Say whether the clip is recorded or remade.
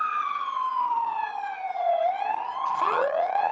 remade